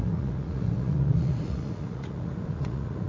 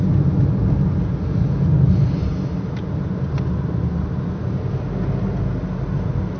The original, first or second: second